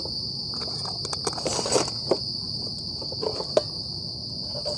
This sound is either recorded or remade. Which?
recorded